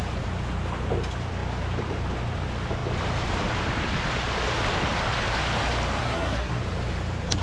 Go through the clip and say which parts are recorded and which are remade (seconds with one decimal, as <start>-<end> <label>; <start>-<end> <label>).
0.0-6.0 recorded; 6.0-6.6 remade; 6.6-7.4 recorded